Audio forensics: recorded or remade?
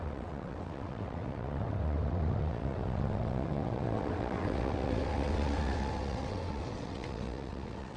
remade